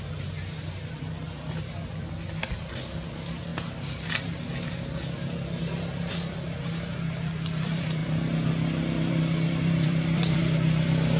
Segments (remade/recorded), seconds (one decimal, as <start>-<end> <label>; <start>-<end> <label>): 0.0-3.5 remade; 3.5-6.6 recorded; 6.6-8.0 remade; 8.0-9.1 recorded; 9.1-10.4 remade; 10.4-11.2 recorded